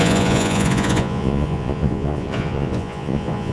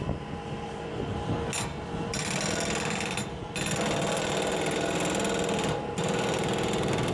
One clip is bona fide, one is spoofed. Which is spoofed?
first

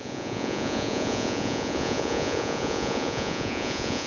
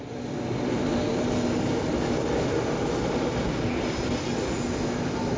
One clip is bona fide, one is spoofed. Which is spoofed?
first